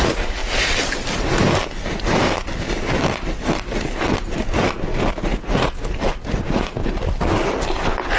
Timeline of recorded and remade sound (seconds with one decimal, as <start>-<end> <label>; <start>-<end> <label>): 0.0-0.4 remade; 0.4-5.1 recorded; 5.1-6.8 remade; 6.8-8.2 recorded